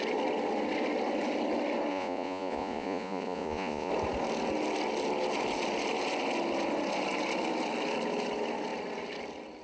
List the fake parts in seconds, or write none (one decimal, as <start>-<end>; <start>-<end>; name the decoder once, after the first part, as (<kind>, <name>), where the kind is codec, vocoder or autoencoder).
1.9-3.9 (vocoder, Vocos)